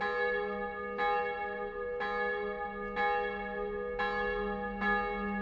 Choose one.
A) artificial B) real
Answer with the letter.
B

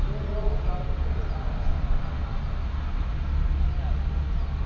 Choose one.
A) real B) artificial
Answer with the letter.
A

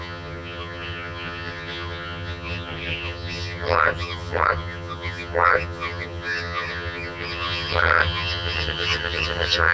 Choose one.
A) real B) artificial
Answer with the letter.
B